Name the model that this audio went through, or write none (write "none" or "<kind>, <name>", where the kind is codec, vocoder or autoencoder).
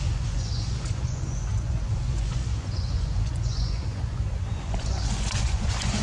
vocoder, Vocos